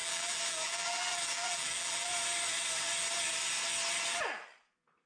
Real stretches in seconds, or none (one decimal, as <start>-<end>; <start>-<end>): 2.1-5.1